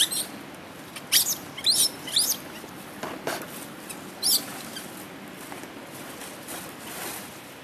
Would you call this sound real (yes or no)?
yes